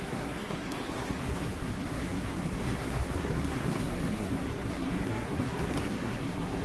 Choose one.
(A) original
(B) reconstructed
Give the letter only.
B